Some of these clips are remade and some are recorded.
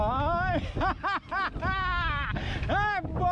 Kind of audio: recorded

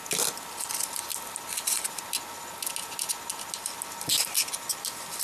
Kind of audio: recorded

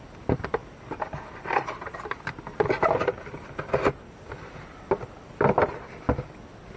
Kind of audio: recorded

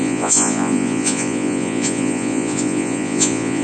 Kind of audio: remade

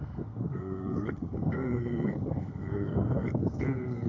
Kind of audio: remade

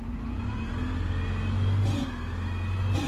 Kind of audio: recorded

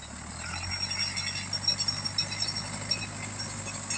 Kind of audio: recorded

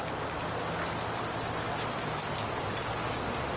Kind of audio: recorded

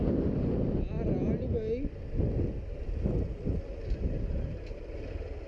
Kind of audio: recorded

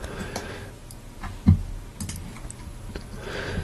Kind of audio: recorded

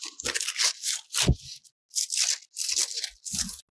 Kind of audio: recorded